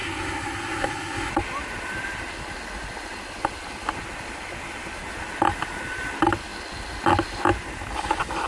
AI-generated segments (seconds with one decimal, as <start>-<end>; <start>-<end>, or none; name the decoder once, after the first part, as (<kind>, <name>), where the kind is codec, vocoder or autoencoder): 0.0-1.3 (codec, SNAC)